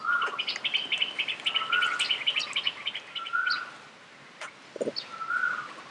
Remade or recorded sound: recorded